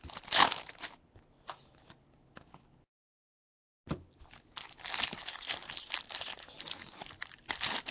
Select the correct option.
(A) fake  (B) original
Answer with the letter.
B